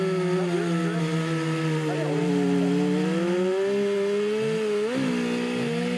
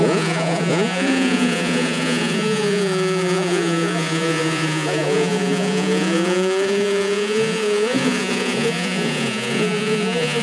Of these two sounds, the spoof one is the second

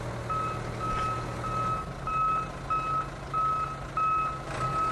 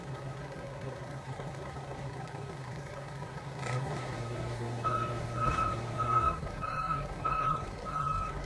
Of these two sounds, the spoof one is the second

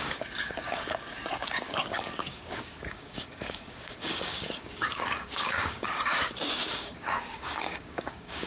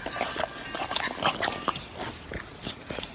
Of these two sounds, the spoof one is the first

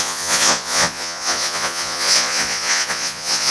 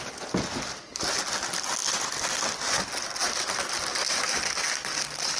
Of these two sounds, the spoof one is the first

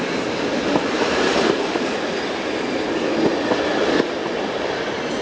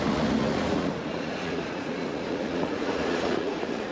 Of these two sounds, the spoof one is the second